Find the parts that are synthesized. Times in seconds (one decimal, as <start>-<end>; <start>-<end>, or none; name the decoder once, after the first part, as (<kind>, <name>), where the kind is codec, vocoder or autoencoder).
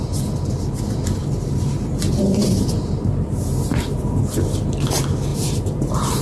1.2-4.2 (vocoder, BigVGAN v2); 5.3-6.2